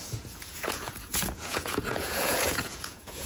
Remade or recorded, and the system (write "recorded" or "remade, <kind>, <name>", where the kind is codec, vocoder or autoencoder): remade, vocoder, Vocos